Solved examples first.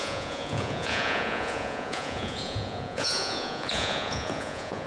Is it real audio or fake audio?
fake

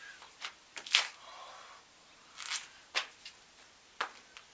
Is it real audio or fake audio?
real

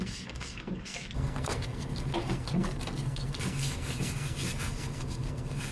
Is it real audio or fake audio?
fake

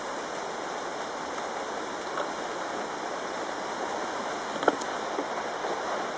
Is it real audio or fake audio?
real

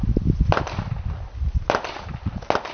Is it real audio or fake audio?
real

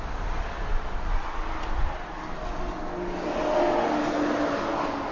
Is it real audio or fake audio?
real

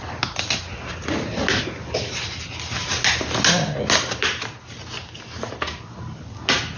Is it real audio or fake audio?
real